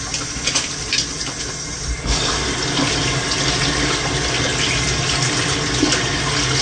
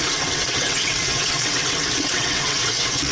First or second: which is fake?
second